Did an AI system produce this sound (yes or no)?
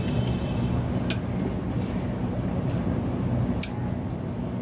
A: no